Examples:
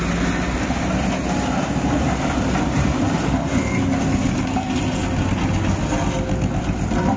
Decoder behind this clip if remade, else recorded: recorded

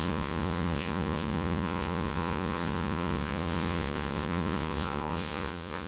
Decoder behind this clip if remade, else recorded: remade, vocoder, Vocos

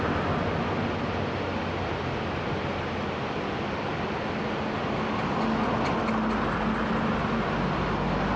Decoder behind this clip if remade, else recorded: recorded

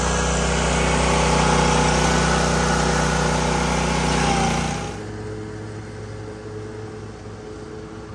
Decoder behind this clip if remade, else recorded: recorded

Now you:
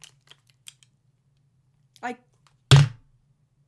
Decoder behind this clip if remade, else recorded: recorded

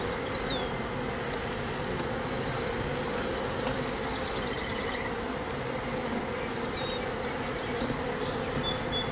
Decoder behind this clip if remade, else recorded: recorded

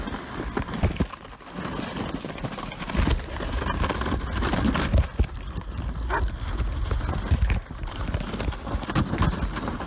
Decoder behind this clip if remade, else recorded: recorded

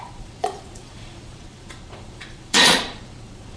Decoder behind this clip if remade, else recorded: remade, vocoder, Vocos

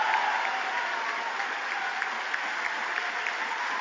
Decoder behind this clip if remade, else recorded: recorded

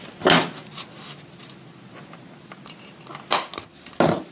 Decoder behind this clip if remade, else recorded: recorded